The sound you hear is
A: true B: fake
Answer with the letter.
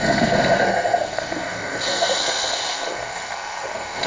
B